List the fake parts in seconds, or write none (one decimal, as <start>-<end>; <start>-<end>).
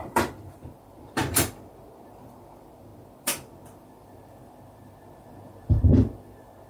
0.0-6.7